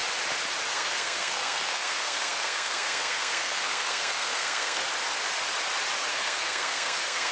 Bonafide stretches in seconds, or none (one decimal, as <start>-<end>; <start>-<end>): 0.0-0.7; 4.9-6.1